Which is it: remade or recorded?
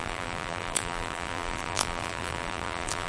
remade